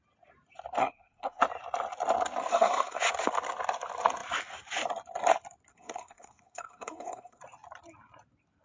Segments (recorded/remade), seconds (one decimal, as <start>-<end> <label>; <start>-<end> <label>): 0.0-0.8 recorded; 0.8-1.4 remade; 1.4-2.5 recorded; 2.5-3.0 remade; 3.0-5.7 recorded; 5.7-7.4 remade; 7.4-8.6 recorded

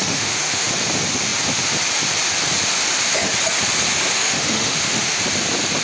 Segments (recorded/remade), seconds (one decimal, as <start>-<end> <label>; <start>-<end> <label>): 0.0-0.7 remade; 0.7-4.2 recorded; 4.2-5.2 remade; 5.2-5.8 recorded

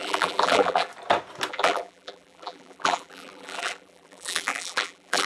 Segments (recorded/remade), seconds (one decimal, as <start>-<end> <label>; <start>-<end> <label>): 0.0-0.9 remade; 0.9-1.5 recorded; 1.5-5.3 remade

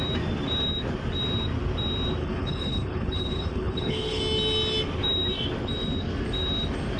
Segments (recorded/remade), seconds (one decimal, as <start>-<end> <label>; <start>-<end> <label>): 0.0-2.2 recorded; 2.2-4.2 remade; 4.2-7.0 recorded

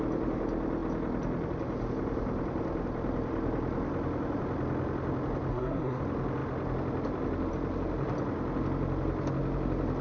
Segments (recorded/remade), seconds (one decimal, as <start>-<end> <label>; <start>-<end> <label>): 0.0-5.5 recorded; 5.5-6.0 remade; 6.0-10.0 recorded